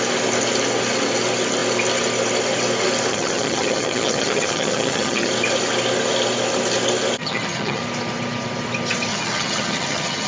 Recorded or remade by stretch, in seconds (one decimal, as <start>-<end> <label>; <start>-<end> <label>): 0.0-3.1 recorded; 3.1-5.3 remade; 5.3-7.2 recorded; 7.2-7.8 remade; 7.8-9.1 recorded; 9.1-10.3 remade